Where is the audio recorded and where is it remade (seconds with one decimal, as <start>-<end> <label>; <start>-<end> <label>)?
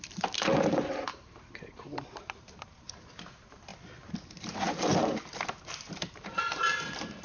0.0-3.7 remade; 3.7-4.2 recorded; 4.2-7.2 remade